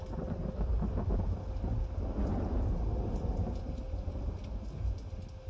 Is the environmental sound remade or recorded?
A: recorded